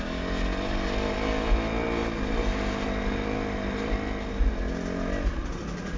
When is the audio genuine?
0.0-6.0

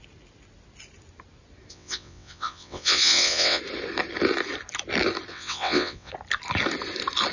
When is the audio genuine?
0.0-1.7; 3.6-5.3; 6.1-7.3